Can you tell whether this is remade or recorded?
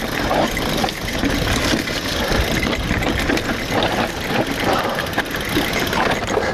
recorded